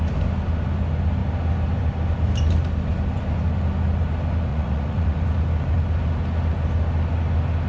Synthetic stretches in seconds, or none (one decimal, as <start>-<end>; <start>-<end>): 4.5-5.2